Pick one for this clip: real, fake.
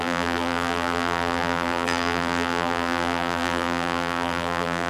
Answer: fake